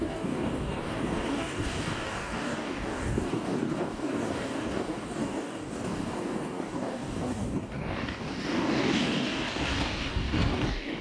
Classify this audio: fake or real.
fake